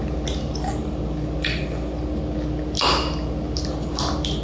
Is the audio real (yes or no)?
yes